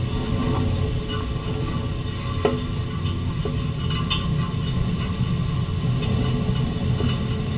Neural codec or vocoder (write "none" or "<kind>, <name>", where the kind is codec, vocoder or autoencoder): none